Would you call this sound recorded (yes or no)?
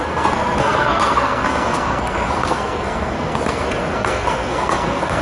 no